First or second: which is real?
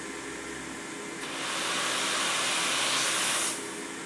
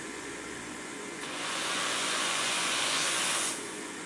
first